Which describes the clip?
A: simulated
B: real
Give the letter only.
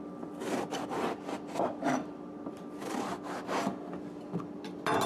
B